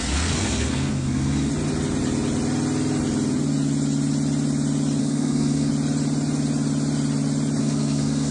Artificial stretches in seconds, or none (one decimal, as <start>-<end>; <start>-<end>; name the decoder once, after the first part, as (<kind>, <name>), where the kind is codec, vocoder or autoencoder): 0.0-1.5 (codec, SNAC); 5.0-5.7; 7.6-8.3